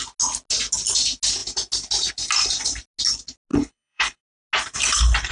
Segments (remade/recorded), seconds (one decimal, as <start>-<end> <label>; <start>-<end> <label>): 0.0-3.5 recorded; 3.5-4.2 remade; 4.2-5.3 recorded